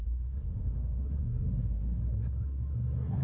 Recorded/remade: remade